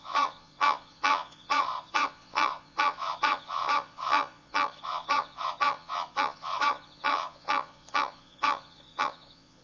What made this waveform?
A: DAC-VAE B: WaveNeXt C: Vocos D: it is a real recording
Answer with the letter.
C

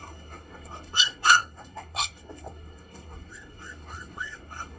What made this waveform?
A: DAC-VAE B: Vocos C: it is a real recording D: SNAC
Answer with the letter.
D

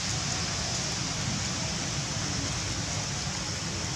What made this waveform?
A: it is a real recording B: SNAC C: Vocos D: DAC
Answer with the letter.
A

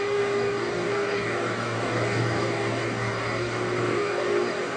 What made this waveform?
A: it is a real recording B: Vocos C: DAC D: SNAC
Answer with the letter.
C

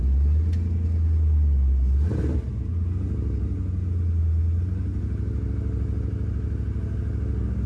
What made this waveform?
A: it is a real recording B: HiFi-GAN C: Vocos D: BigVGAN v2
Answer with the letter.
A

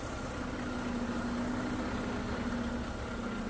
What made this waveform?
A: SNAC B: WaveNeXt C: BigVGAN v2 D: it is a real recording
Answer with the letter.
D